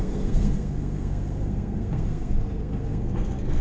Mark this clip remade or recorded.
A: remade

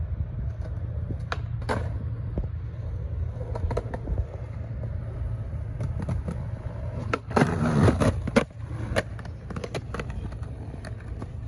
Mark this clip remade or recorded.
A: recorded